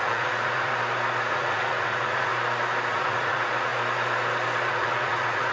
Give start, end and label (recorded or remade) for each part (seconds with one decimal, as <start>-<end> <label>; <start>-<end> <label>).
0.0-0.7 remade; 0.7-1.3 recorded; 1.3-2.3 remade; 2.3-2.9 recorded; 2.9-3.7 remade; 3.7-4.7 recorded; 4.7-5.5 remade